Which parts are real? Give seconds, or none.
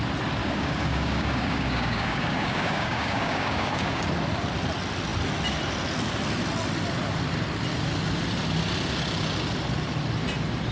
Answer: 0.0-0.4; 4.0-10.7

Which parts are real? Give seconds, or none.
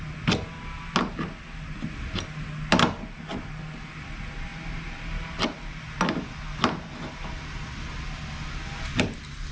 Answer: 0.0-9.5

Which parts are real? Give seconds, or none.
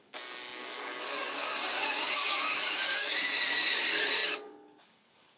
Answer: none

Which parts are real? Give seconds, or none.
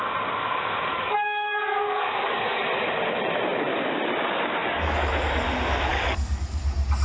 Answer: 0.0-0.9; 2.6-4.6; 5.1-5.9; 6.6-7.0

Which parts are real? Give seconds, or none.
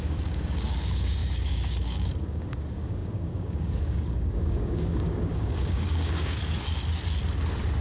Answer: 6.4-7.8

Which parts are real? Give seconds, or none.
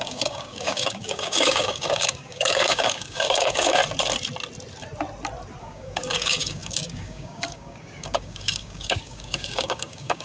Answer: 3.8-5.6